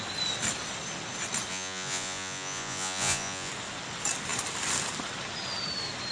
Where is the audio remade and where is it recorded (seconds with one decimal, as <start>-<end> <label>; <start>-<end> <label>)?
0.0-1.5 recorded; 1.5-3.5 remade; 3.5-6.1 recorded

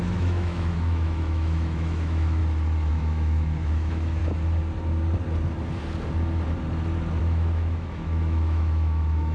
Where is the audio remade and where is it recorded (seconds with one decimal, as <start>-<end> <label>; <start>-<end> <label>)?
0.0-2.4 remade; 2.4-2.9 recorded; 2.9-4.2 remade; 4.2-7.2 recorded; 7.2-9.3 remade

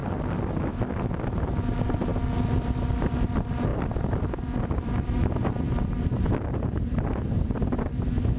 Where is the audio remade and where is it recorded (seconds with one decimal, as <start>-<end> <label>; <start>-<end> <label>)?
0.0-3.7 recorded; 3.7-7.6 remade; 7.6-8.4 recorded